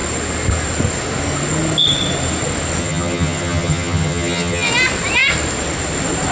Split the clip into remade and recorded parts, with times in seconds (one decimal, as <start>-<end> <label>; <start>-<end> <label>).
0.0-2.8 recorded; 2.8-4.7 remade; 4.7-6.3 recorded

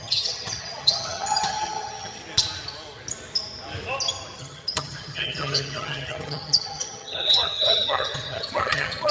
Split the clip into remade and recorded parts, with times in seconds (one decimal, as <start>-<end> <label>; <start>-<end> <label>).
0.0-2.2 remade; 2.2-4.4 recorded; 4.4-9.1 remade

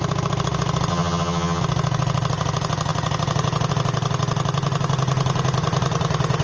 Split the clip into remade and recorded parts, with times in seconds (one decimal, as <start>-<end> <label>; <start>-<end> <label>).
0.0-0.9 recorded; 0.9-1.6 remade; 1.6-6.4 recorded